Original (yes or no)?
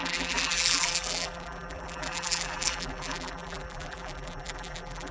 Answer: no